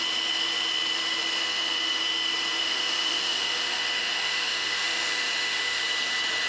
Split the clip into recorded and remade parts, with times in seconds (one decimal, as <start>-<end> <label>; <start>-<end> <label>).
0.0-1.4 recorded; 1.4-2.0 remade; 2.0-2.6 recorded; 2.6-5.8 remade; 5.8-6.5 recorded